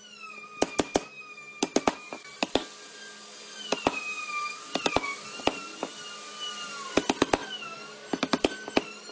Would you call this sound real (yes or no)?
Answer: yes